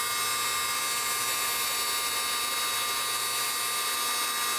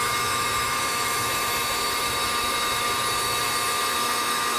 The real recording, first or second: first